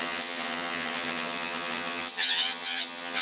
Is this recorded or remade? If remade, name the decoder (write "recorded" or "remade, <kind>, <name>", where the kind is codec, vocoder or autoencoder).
remade, vocoder, HiFi-GAN